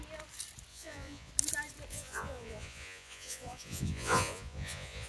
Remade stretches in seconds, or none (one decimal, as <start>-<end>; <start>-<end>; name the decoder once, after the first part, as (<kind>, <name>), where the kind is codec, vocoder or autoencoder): 0.7-1.3 (vocoder, Vocos); 1.9-5.1